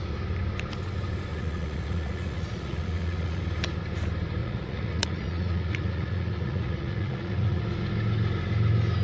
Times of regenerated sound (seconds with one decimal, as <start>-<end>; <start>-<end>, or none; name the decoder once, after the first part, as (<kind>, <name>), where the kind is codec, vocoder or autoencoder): 1.3-3.4 (vocoder, Vocos); 4.4-7.6